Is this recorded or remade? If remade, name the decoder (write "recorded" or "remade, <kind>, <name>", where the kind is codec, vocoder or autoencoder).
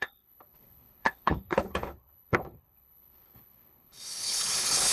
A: remade, codec, HILCodec